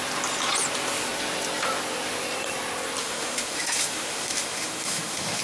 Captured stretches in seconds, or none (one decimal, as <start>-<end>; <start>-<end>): 0.0-3.0

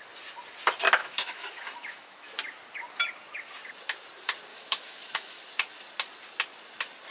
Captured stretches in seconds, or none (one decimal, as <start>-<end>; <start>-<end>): 0.0-1.0; 2.3-4.5; 5.4-7.1

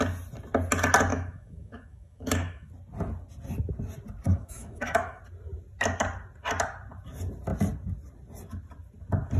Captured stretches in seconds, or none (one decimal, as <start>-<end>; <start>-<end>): 0.0-1.1; 2.7-4.3; 5.2-9.4